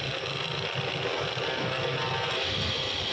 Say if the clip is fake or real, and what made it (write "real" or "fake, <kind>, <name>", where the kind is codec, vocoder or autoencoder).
real